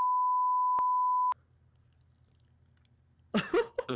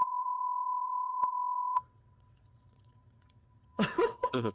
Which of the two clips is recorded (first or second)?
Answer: first